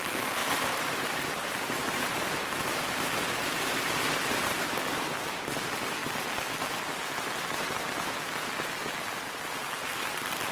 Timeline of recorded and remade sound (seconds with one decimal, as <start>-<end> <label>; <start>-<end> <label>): 0.0-0.4 recorded; 0.4-2.8 remade; 2.8-10.5 recorded